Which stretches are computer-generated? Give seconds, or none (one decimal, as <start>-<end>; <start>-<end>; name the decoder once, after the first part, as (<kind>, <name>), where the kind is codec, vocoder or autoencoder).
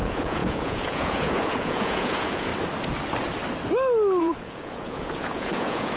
0.0-2.5 (vocoder, Vocos); 4.2-6.0